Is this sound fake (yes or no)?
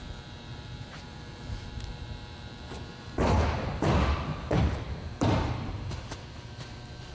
yes